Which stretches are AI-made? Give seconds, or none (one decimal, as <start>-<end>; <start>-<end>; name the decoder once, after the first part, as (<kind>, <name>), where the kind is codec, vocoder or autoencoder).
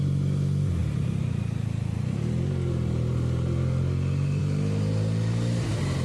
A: none